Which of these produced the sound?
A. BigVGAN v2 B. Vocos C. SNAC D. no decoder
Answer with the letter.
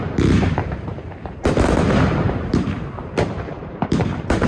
A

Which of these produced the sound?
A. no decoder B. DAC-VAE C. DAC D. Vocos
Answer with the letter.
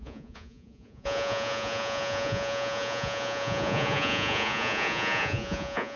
D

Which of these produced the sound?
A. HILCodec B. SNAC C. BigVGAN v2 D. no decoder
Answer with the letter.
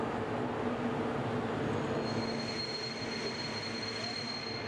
D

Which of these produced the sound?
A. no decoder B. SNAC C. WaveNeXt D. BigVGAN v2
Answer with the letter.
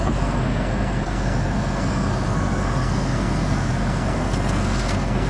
B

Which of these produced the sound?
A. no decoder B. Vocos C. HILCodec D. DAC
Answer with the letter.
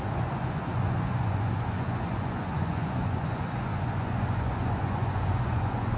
B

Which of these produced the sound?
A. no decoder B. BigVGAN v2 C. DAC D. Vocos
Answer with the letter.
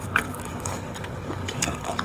C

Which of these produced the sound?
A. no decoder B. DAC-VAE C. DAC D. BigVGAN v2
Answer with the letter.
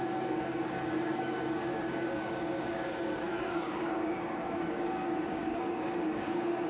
C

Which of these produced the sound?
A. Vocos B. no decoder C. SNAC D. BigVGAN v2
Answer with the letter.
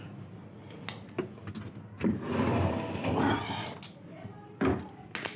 B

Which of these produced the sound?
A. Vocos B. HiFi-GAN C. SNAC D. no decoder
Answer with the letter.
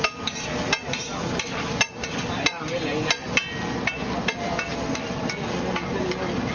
D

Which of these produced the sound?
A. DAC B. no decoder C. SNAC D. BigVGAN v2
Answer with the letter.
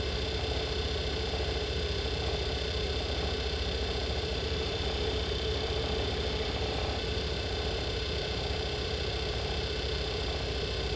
D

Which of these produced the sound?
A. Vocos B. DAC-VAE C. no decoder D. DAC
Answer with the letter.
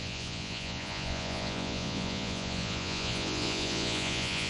A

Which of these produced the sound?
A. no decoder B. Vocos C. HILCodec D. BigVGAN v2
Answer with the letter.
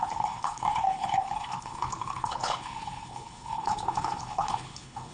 C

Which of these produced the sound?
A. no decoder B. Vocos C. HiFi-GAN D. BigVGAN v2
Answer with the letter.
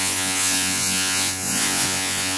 B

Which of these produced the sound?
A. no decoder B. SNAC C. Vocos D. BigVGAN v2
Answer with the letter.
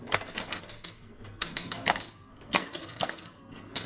B